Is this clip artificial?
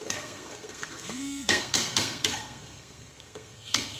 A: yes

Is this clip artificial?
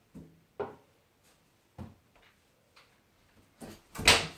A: no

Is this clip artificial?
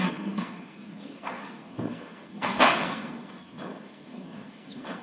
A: yes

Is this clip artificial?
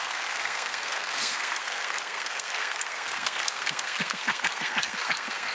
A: yes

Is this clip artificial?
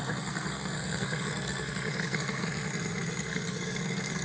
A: yes